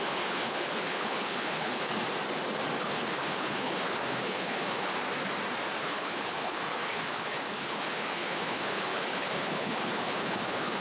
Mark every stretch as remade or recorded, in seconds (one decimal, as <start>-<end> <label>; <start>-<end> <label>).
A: 0.0-1.9 remade; 1.9-2.8 recorded; 2.8-4.9 remade; 4.9-5.8 recorded; 5.8-10.8 remade